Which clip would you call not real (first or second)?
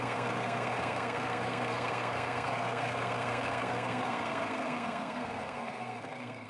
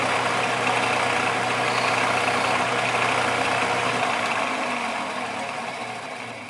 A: first